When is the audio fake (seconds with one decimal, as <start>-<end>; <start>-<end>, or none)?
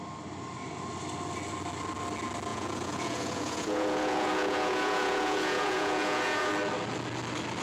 2.5-6.5